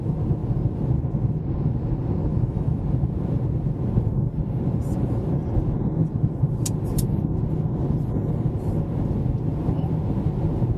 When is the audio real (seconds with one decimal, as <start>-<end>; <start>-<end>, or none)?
0.0-2.3; 2.8-10.8